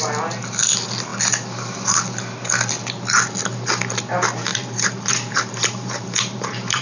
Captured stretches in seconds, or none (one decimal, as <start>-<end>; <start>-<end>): 0.0-4.5